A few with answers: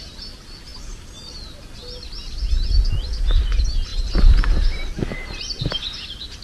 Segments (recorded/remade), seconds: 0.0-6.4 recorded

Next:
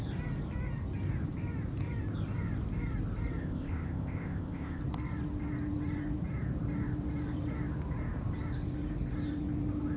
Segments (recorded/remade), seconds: 0.0-3.4 recorded; 3.4-4.8 remade; 4.8-10.0 recorded

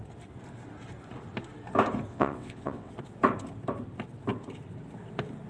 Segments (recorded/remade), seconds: 0.0-2.1 recorded; 2.1-2.9 remade; 2.9-5.5 recorded

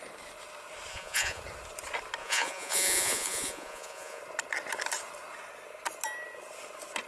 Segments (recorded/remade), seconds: 0.0-0.9 recorded; 0.9-1.4 remade; 1.4-2.2 recorded; 2.2-4.2 remade; 4.2-7.1 recorded

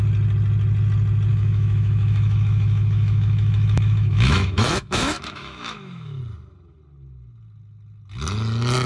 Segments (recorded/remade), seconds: 0.0-1.3 recorded; 1.3-6.2 remade; 6.2-8.9 recorded